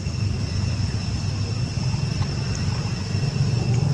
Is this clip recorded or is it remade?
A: recorded